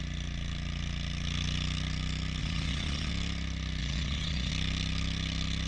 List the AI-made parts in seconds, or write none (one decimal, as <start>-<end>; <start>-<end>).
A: 2.4-3.1; 3.8-4.5